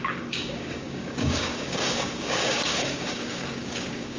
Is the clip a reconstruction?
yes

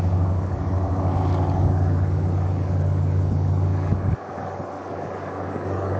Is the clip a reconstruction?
yes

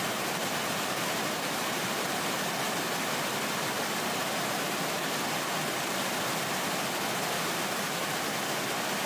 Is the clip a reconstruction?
no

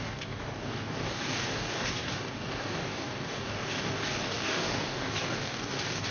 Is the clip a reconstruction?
yes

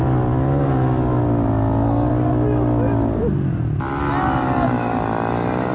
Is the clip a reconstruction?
no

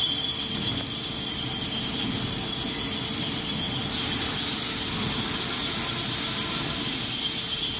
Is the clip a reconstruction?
no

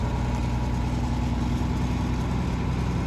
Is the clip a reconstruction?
no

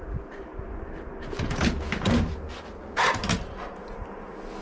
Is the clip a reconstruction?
no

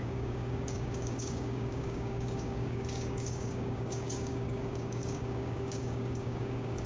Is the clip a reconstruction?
yes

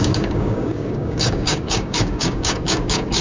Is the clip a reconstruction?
yes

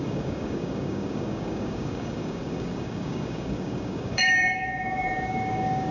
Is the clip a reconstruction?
yes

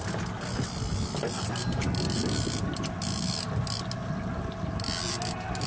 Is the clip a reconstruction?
no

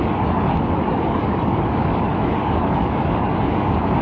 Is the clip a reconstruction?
yes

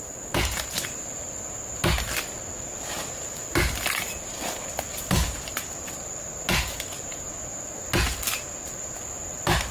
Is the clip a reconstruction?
no